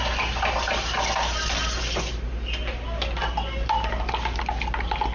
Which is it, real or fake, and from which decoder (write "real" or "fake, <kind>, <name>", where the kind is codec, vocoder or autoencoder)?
real